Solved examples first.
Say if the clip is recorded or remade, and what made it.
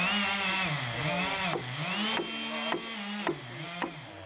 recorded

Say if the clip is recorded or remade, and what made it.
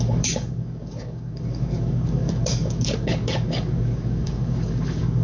remade, codec, DAC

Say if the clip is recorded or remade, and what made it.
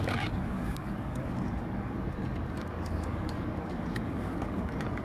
remade, codec, DAC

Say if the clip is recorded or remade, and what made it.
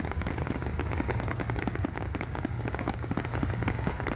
remade, codec, DAC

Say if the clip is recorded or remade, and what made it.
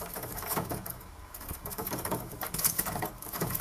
remade, codec, DAC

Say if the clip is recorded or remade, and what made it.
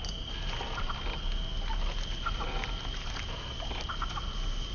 recorded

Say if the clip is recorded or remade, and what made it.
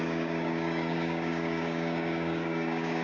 remade, codec, DAC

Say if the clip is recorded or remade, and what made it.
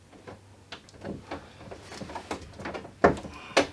recorded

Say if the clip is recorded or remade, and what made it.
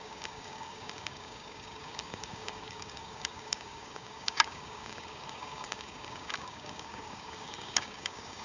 remade, codec, DAC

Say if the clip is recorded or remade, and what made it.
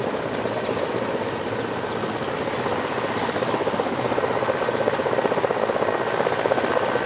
recorded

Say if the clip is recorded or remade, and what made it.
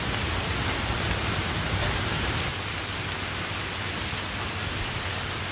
recorded